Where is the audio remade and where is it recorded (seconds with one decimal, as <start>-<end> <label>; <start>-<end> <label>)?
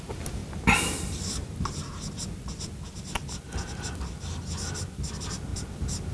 0.0-6.1 recorded